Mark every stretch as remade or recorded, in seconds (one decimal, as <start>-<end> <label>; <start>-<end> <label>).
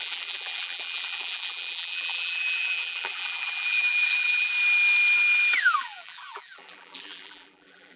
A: 0.0-4.5 remade; 4.5-5.6 recorded; 5.6-8.0 remade